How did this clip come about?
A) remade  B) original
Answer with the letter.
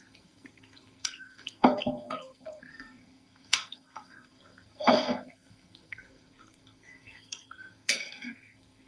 A